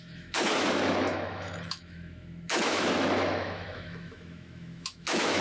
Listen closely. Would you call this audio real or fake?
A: fake